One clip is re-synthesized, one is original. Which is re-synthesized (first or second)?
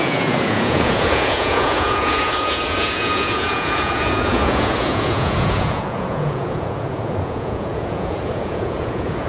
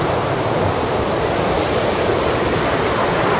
first